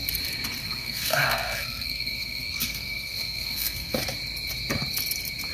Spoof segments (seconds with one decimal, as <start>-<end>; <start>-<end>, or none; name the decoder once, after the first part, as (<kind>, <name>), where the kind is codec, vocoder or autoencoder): 0.6-3.9 (codec, SNAC)

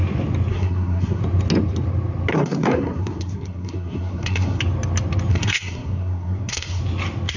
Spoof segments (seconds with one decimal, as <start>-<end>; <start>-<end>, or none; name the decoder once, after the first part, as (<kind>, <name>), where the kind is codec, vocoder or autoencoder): 0.5-1.2 (codec, SNAC); 2.3-4.6; 5.3-6.8

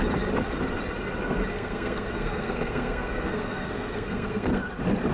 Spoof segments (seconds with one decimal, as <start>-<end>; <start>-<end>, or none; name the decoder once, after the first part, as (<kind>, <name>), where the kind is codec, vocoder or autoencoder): 1.5-4.6 (codec, SNAC)

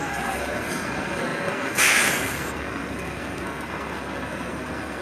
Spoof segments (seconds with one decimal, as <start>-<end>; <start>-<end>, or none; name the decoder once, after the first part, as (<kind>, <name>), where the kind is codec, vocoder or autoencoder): 0.0-5.0 (codec, SNAC)

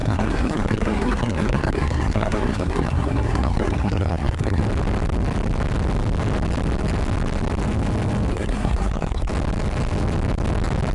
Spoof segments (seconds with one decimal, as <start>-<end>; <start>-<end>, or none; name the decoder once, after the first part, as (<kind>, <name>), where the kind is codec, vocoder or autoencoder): 0.0-4.6 (codec, SNAC); 8.3-9.3

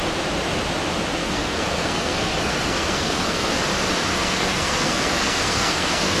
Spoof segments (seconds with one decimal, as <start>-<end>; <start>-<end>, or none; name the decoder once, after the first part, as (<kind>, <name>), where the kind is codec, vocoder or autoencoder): 1.2-3.6 (codec, SNAC); 4.1-6.2

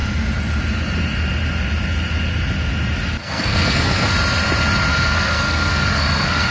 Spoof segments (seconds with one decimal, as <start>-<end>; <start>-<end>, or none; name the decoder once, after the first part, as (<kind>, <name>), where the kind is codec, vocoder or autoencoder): 3.2-4.1 (codec, SNAC); 4.9-6.5

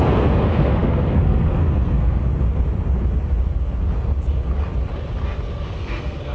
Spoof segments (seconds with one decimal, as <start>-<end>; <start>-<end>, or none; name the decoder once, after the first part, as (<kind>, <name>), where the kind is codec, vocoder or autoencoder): 0.0-2.2 (codec, SNAC); 5.7-6.3